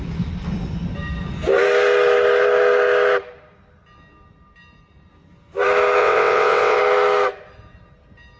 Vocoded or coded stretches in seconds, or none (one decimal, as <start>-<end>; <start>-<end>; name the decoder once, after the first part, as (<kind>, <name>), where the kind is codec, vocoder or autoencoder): 6.0-6.8 (vocoder, WaveNeXt)